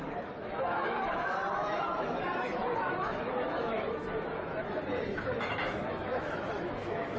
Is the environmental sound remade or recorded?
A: remade